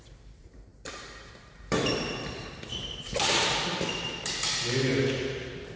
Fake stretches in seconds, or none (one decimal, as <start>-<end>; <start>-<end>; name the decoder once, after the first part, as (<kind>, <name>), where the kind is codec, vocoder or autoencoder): 0.0-4.9 (vocoder, BigVGAN v2)

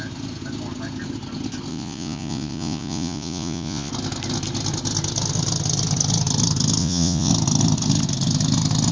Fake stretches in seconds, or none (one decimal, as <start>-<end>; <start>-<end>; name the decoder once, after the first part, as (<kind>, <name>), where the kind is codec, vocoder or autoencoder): 1.7-3.9 (vocoder, Vocos); 6.8-7.3

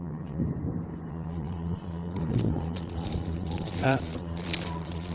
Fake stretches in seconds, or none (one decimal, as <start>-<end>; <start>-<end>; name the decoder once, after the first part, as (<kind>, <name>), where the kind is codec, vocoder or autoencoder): 0.0-0.4 (vocoder, Vocos); 1.1-5.1

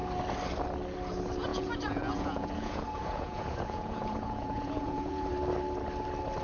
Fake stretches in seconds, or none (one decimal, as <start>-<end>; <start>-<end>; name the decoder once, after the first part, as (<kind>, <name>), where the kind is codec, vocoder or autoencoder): 1.5-5.3 (vocoder, Vocos)

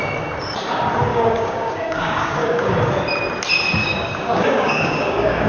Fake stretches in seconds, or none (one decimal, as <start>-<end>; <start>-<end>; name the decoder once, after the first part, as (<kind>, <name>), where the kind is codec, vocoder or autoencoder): 1.1-2.9 (codec, DAC); 3.8-5.5

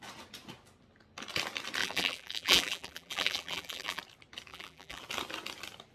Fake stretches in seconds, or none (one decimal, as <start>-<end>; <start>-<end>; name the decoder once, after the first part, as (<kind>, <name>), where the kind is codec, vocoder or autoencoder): 1.8-4.0 (vocoder, BigVGAN v2); 4.5-5.0

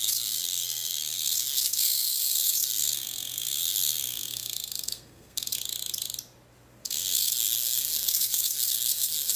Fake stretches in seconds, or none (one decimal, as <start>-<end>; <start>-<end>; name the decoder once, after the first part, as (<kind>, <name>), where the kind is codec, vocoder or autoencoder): 0.0-5.5 (codec, SNAC); 6.8-9.4